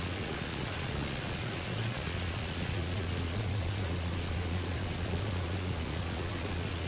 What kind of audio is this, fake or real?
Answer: fake